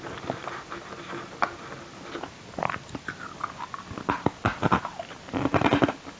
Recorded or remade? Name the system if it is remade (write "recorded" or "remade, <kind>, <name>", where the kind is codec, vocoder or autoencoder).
recorded